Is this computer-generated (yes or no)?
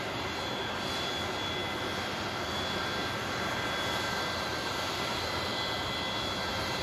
no